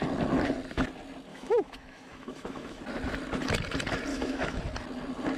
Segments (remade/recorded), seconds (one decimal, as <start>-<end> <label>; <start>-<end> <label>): 0.0-1.3 recorded; 1.3-2.8 remade; 2.8-4.1 recorded; 4.1-4.6 remade; 4.6-5.4 recorded